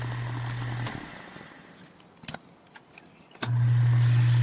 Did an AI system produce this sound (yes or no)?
no